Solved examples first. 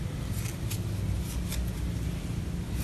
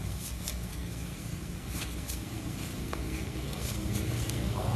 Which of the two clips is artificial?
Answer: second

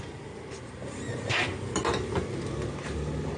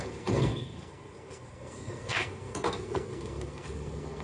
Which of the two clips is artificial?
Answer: second